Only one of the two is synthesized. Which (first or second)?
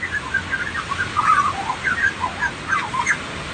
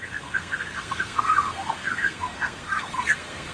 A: second